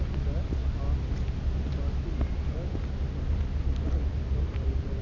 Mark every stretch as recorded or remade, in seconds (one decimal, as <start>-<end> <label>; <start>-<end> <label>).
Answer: 0.0-5.0 recorded